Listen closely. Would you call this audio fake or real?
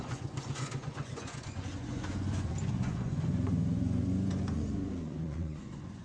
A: fake